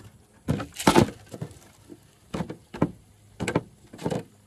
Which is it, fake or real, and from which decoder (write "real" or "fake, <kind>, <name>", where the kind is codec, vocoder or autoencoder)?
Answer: real